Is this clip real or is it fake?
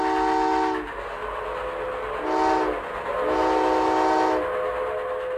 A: real